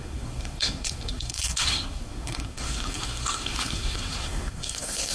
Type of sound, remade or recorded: remade